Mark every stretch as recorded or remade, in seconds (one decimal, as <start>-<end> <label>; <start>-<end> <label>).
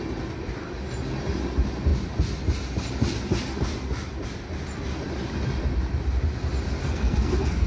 0.0-6.8 recorded; 6.8-7.7 remade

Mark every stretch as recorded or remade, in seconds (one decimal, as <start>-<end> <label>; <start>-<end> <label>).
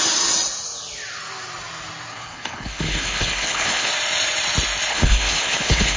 0.0-2.1 recorded; 2.1-3.9 remade; 3.9-4.9 recorded; 4.9-6.0 remade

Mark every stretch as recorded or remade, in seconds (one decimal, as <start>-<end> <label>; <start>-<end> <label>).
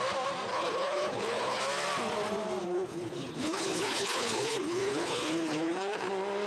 0.0-0.5 recorded; 0.5-1.6 remade; 1.6-2.6 recorded; 2.6-6.1 remade; 6.1-6.5 recorded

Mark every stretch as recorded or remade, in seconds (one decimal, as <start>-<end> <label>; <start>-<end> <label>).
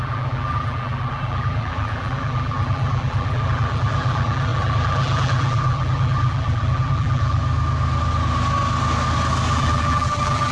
0.0-7.4 remade; 7.4-9.5 recorded; 9.5-10.5 remade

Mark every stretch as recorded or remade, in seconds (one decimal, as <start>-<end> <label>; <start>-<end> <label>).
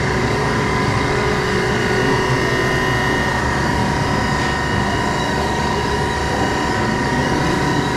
0.0-1.8 remade; 1.8-3.4 recorded; 3.4-3.8 remade; 3.8-5.2 recorded; 5.2-6.2 remade; 6.2-6.7 recorded; 6.7-8.0 remade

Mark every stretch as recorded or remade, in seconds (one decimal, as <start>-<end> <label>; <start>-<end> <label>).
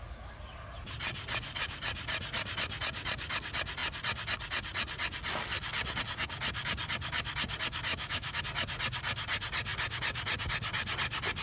0.0-7.9 recorded; 7.9-8.4 remade; 8.4-11.4 recorded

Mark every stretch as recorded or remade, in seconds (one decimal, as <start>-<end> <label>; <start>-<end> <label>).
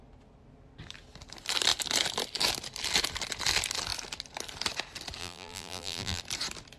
0.0-5.2 recorded; 5.2-6.2 remade; 6.2-6.8 recorded